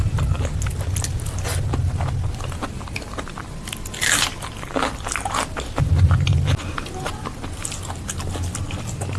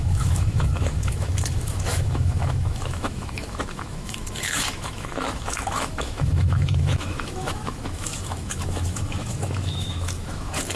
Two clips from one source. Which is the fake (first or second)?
second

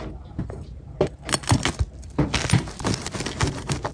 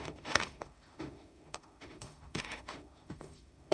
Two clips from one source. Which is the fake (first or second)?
second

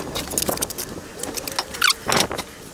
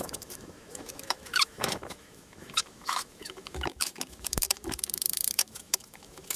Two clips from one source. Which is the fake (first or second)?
second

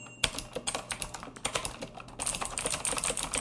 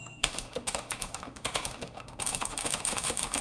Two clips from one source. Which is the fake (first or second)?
second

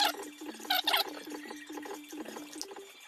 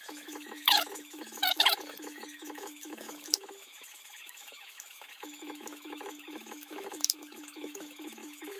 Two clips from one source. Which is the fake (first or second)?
second